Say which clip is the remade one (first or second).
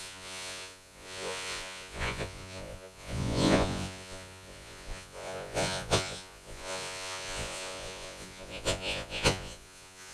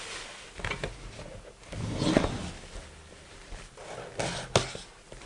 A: first